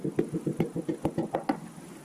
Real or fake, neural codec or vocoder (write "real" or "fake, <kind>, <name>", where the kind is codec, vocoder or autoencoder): real